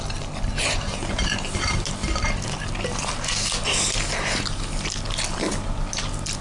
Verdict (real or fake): real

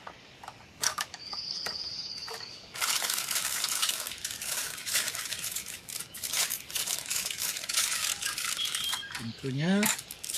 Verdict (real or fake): fake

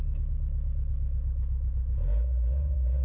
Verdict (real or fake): real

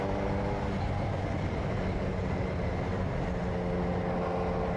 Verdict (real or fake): real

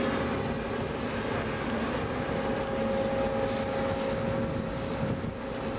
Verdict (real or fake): real